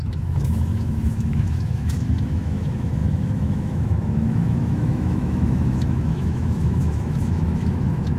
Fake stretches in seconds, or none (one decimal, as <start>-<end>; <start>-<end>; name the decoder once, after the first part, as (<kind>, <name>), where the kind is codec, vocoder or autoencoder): 0.0-8.2 (autoencoder, DAC-VAE)